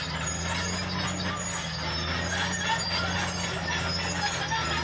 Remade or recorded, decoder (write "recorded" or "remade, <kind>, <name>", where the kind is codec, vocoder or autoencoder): recorded